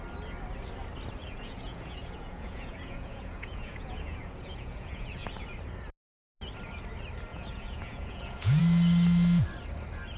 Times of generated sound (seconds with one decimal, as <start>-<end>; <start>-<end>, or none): 1.2-5.3; 7.3-8.6